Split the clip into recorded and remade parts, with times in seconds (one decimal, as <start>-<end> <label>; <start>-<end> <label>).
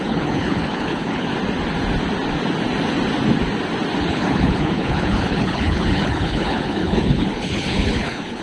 0.0-1.3 remade; 1.3-4.0 recorded; 4.0-8.4 remade